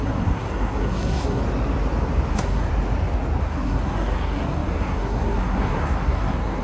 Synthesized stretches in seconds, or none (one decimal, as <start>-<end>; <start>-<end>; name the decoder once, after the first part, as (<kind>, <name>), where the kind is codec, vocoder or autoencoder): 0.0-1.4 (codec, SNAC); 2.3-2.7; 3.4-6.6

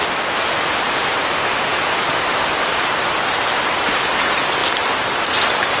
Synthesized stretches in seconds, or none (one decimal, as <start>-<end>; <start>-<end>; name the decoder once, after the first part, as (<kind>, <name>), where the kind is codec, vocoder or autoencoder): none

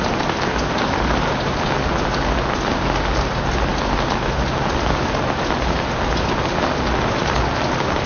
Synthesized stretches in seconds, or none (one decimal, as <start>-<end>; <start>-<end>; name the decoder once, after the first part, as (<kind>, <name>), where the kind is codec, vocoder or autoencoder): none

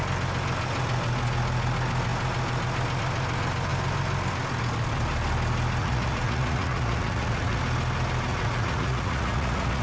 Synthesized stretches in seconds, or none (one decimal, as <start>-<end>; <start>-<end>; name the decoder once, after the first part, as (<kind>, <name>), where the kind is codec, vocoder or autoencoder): 5.8-7.6 (vocoder, Vocos); 8.3-9.8